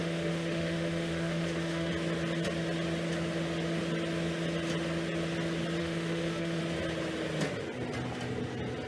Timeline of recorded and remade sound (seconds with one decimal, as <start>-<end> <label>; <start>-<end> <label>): 0.0-1.9 remade; 1.9-5.8 recorded; 5.8-6.6 remade; 6.6-8.9 recorded